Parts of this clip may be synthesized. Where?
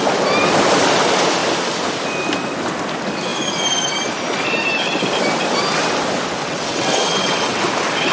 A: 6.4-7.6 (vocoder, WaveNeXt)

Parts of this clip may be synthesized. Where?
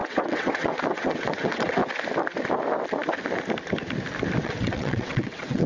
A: 0.0-1.8 (vocoder, WaveNeXt); 4.4-5.7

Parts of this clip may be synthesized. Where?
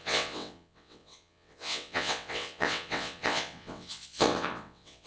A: 0.0-5.1 (vocoder, WaveNeXt)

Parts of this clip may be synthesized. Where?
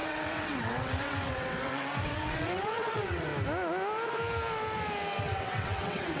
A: 0.0-3.3 (vocoder, WaveNeXt); 5.2-6.2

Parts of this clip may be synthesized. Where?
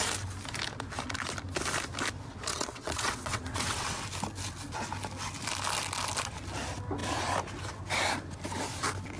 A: 2.5-4.0 (vocoder, WaveNeXt)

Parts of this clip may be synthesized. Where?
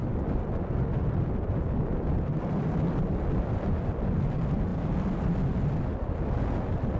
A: none